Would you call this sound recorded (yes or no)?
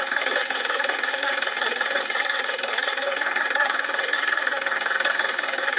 no